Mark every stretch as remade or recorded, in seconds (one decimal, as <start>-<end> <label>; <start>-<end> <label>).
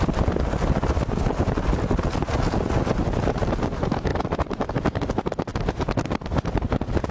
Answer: 0.0-4.1 recorded; 4.1-5.1 remade; 5.1-5.5 recorded; 5.5-6.6 remade; 6.6-7.1 recorded